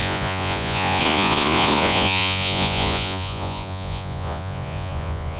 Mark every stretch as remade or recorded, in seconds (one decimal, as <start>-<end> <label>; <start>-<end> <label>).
0.0-5.4 remade